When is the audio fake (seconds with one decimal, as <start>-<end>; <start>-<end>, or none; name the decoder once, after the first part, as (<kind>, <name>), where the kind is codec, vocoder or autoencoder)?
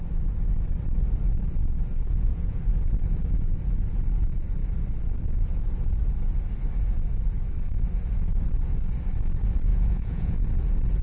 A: 2.1-2.6 (vocoder, Vocos); 9.7-10.5